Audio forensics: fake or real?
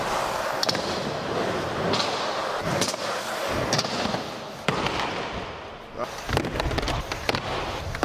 real